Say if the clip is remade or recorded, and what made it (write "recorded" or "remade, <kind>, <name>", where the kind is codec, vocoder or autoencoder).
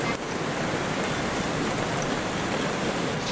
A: recorded